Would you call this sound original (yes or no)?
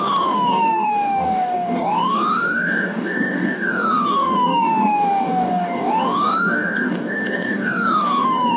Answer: no